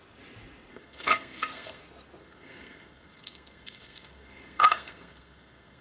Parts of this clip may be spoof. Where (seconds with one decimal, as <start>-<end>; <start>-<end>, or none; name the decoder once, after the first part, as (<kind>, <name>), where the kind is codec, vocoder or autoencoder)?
0.7-1.8 (codec, SNAC); 2.2-5.8